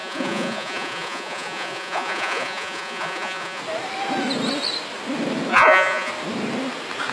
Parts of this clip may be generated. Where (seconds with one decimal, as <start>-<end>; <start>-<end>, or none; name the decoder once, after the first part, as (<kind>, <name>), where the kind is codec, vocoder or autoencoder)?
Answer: 0.0-3.6 (vocoder, Vocos); 5.5-6.1